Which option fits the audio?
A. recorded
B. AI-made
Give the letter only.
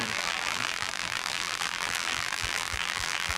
B